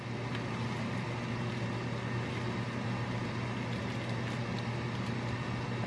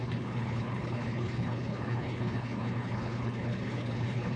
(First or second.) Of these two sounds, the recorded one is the first